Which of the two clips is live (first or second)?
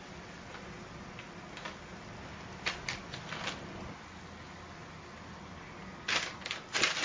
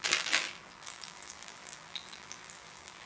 first